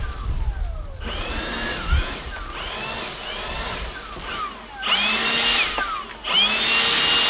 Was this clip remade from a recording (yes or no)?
no